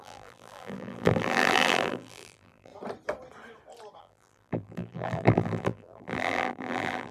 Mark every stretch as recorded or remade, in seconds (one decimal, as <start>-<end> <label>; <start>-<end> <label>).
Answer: 0.0-2.7 remade; 2.7-4.0 recorded; 4.0-7.1 remade